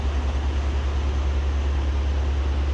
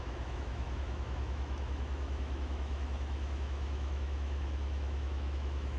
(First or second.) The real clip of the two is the first